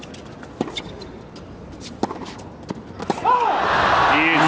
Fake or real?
real